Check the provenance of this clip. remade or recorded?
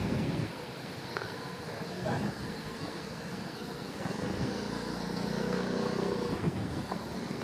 remade